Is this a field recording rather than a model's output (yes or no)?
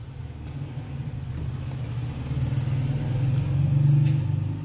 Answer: yes